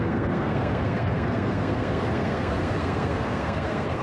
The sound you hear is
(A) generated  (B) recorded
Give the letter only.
A